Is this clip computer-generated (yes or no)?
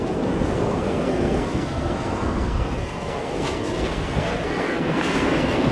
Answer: yes